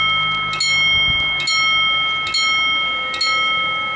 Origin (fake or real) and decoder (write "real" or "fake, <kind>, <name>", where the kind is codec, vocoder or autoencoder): real